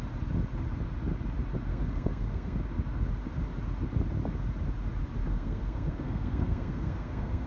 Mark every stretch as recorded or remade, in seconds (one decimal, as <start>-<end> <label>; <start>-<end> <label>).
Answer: 0.0-1.7 recorded; 1.7-2.6 remade; 2.6-5.3 recorded; 5.3-7.5 remade